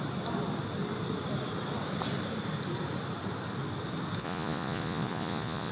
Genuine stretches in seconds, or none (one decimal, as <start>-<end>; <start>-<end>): 0.0-4.2